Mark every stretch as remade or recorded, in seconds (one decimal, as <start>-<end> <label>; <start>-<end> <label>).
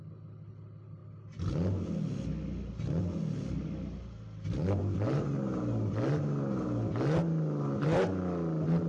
0.0-8.9 recorded